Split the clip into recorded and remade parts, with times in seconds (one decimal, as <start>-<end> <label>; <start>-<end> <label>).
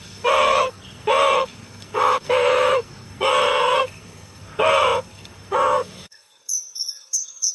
0.0-7.5 remade